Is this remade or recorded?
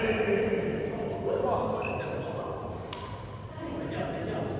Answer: recorded